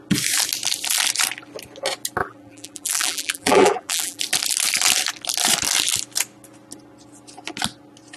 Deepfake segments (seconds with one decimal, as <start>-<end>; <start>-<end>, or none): 2.2-4.2